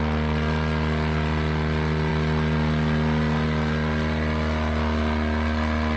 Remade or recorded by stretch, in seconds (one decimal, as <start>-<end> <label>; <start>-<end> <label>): 0.0-6.0 recorded